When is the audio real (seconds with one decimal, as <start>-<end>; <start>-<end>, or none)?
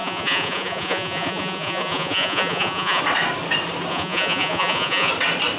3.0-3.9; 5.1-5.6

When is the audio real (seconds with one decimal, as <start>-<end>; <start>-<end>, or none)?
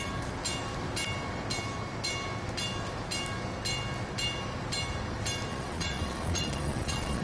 0.0-5.5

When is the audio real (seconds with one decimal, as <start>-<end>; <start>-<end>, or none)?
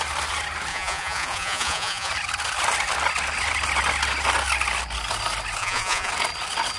0.0-0.7; 2.1-5.6; 6.1-6.8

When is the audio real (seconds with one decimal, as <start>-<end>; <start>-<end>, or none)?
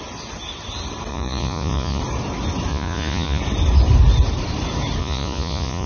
0.0-1.1; 2.0-2.7; 3.4-5.0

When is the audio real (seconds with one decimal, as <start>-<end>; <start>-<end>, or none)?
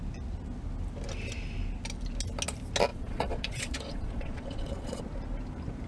0.0-2.9; 5.0-5.9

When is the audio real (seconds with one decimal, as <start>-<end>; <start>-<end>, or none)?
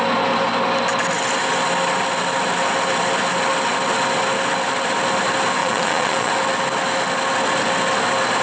0.0-5.6; 6.3-8.4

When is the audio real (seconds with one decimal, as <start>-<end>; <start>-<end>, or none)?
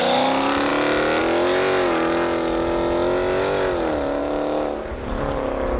0.0-5.8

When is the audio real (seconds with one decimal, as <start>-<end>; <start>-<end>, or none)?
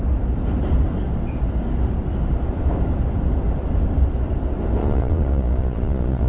0.0-4.8